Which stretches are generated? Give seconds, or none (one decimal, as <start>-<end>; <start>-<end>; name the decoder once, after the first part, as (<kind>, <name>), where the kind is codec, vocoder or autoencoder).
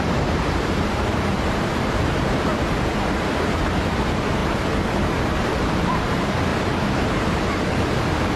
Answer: 0.0-2.5 (vocoder, BigVGAN v2); 3.6-4.4; 5.7-6.5; 7.6-8.4